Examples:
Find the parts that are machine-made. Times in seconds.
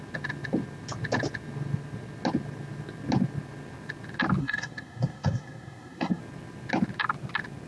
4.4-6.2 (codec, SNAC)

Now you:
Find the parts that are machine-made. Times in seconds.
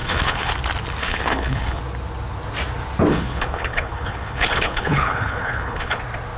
0.0-0.5 (codec, HILCodec); 1.0-1.8; 3.1-6.0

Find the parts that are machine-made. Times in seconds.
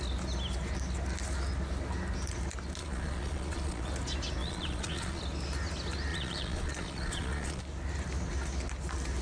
2.8-3.9 (vocoder, Vocos); 4.4-5.2; 6.1-7.6